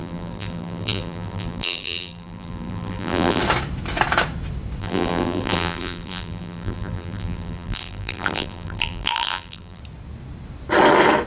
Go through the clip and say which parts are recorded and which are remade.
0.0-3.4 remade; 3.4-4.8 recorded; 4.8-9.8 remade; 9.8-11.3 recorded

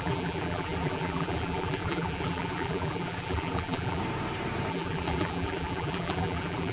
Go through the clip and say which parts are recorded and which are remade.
0.0-4.0 remade; 4.0-4.7 recorded; 4.7-6.7 remade

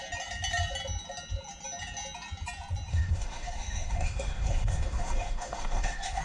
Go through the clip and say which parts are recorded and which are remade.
0.0-2.9 recorded; 2.9-6.2 remade

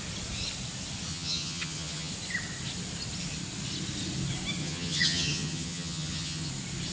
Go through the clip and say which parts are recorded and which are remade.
0.0-1.1 recorded; 1.1-2.1 remade; 2.1-4.6 recorded; 4.6-6.5 remade; 6.5-6.9 recorded

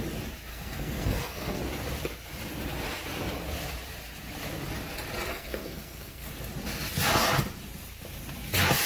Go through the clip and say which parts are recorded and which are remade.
0.0-0.5 recorded; 0.5-1.6 remade; 1.6-5.3 recorded; 5.3-6.3 remade; 6.3-8.9 recorded

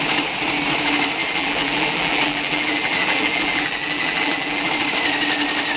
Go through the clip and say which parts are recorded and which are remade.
0.0-1.2 recorded; 1.2-4.7 remade; 4.7-5.8 recorded

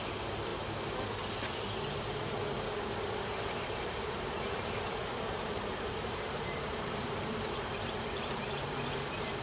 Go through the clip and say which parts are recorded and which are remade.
0.0-0.5 remade; 0.5-3.2 recorded; 3.2-9.4 remade

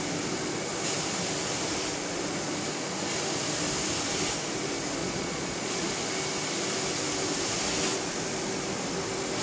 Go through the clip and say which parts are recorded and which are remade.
0.0-5.0 recorded; 5.0-5.9 remade; 5.9-9.4 recorded